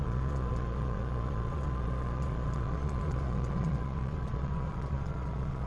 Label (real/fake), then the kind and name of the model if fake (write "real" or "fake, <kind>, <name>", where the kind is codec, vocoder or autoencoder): fake, vocoder, Vocos